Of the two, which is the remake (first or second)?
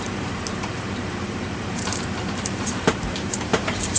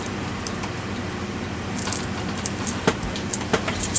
first